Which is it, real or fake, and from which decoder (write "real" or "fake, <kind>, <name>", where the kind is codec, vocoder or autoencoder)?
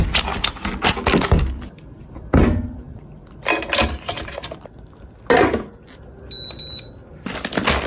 real